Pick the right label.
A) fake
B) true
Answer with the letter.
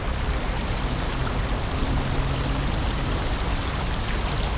B